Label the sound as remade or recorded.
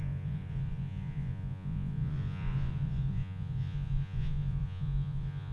remade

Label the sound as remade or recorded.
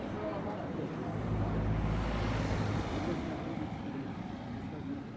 recorded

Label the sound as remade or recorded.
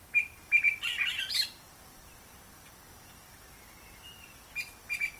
remade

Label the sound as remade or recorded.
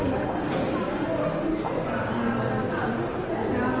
recorded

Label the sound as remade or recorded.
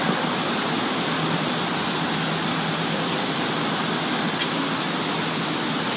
recorded